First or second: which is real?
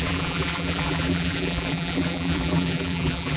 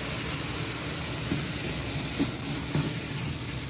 second